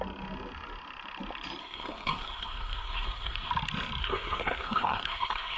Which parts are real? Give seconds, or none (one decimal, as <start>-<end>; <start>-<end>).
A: 0.0-1.6; 3.5-4.0